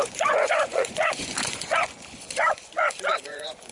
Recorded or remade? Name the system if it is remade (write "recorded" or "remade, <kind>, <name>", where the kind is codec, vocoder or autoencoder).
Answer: remade, vocoder, Vocos